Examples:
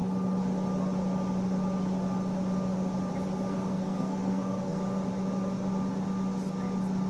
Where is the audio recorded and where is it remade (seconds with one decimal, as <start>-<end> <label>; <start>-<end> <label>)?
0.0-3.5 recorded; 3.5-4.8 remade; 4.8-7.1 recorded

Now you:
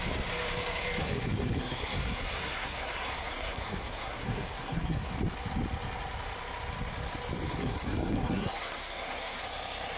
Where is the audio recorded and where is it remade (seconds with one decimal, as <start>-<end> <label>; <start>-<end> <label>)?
0.0-1.0 recorded; 1.0-5.1 remade; 5.1-7.6 recorded; 7.6-9.4 remade; 9.4-10.0 recorded

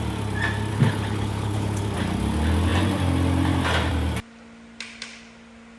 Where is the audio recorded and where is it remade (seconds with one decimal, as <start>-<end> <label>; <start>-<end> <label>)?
0.0-0.7 recorded; 0.7-1.8 remade; 1.8-5.8 recorded